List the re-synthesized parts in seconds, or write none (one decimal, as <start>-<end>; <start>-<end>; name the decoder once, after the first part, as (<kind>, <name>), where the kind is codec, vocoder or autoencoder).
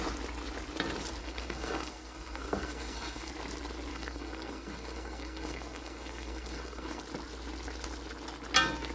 1.2-3.3 (codec, SNAC); 3.9-7.0